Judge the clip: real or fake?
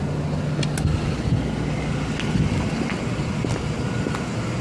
real